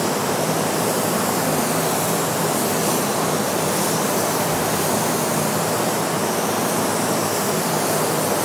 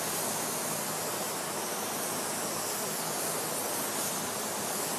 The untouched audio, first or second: second